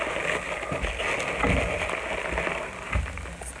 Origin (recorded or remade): recorded